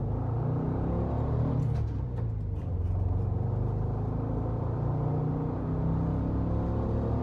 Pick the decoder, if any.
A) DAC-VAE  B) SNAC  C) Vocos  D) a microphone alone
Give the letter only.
D